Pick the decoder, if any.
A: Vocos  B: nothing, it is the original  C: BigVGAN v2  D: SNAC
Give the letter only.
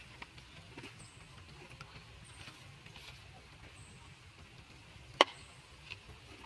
B